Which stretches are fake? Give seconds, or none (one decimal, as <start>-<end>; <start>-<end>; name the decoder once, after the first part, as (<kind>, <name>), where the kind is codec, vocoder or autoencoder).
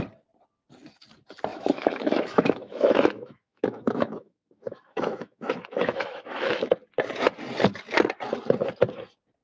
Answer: 1.5-6.7 (autoencoder, DAC-VAE)